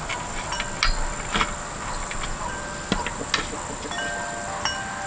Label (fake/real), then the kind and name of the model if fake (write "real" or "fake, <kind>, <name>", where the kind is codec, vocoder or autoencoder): real